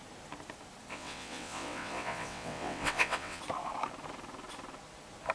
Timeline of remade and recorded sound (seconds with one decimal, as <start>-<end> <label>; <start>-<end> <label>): 0.0-0.9 recorded; 0.9-3.4 remade; 3.4-5.3 recorded